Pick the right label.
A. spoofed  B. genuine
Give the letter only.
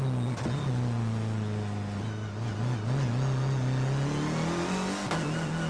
B